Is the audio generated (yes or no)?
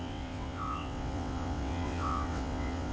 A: yes